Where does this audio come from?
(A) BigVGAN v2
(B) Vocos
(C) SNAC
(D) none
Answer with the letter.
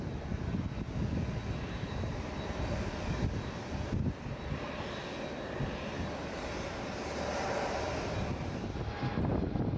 D